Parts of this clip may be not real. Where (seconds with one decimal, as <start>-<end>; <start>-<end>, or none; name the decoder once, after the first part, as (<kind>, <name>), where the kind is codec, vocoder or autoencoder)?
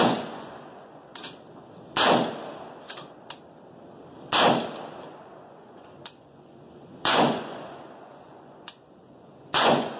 0.0-1.1 (vocoder, Vocos); 5.0-10.0